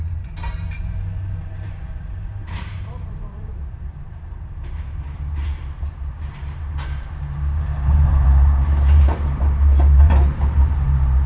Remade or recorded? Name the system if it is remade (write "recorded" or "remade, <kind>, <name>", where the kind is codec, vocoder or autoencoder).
remade, vocoder, BigVGAN v2